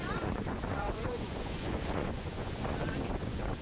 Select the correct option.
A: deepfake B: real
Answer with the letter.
A